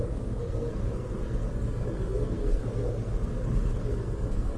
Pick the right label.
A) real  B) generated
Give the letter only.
B